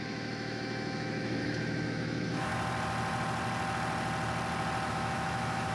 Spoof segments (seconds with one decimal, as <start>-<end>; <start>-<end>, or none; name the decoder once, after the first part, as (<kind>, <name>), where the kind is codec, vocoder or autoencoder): 0.0-2.5 (autoencoder, DAC-VAE); 4.9-5.7